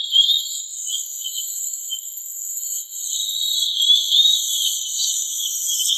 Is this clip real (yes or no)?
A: yes